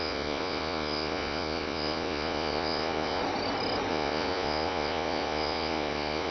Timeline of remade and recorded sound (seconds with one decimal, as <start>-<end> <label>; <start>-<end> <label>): 0.0-3.2 remade; 3.2-3.9 recorded; 3.9-6.3 remade